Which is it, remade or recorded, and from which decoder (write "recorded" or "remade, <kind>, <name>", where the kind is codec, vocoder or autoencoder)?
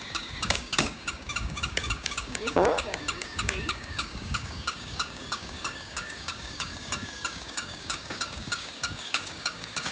remade, codec, DAC